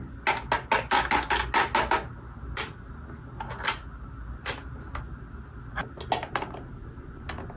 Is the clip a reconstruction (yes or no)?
no